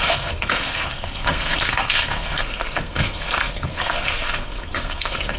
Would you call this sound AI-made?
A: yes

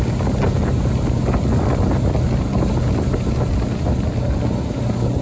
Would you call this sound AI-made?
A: no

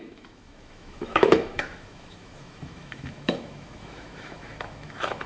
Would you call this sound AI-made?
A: yes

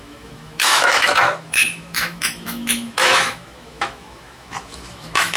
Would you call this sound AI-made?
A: yes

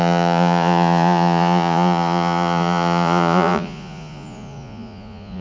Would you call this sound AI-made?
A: yes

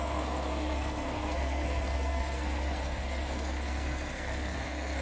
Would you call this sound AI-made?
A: yes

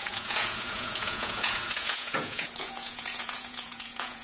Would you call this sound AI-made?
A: yes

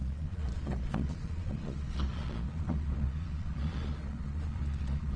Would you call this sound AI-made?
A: yes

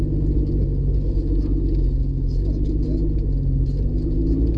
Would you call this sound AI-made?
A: no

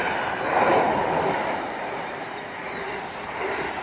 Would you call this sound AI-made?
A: no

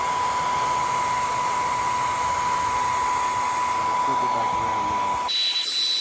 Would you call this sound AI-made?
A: no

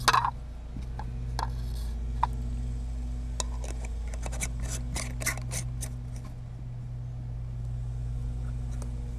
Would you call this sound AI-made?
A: no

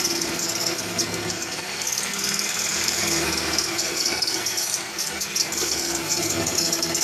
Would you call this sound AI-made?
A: yes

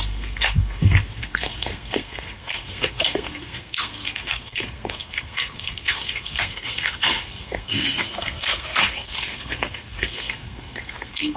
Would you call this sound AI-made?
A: yes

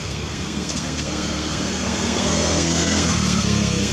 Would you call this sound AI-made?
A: yes